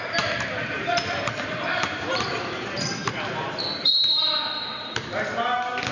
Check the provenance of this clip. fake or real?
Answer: fake